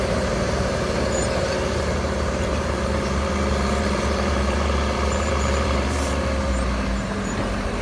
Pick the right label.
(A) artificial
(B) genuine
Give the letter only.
A